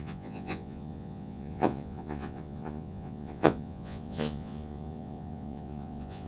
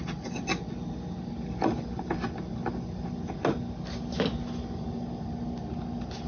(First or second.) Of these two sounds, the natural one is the second